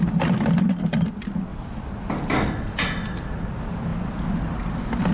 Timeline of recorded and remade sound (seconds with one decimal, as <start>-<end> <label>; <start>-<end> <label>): 0.0-5.1 recorded